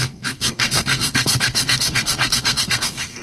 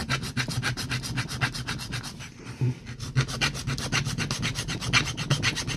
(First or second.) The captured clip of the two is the second